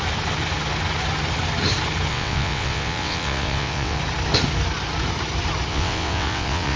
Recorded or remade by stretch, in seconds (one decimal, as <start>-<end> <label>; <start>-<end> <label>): 0.0-2.1 recorded; 2.1-4.0 remade; 4.0-5.7 recorded; 5.7-6.8 remade